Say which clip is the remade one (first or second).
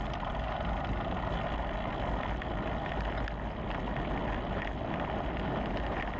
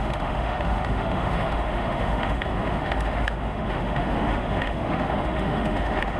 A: second